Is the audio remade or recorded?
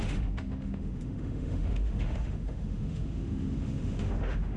remade